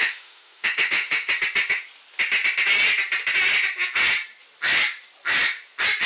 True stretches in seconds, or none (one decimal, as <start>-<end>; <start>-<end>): 1.3-6.1